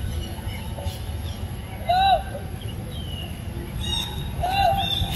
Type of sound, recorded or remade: recorded